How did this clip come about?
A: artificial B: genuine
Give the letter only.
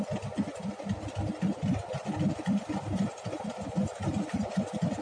B